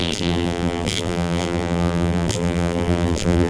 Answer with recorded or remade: remade